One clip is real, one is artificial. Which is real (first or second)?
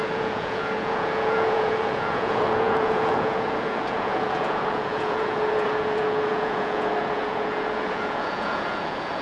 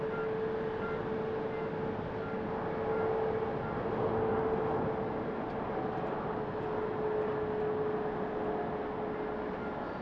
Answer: second